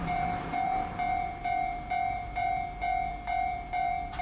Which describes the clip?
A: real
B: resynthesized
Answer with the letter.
B